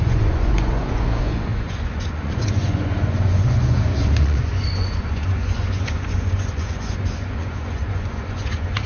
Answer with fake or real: fake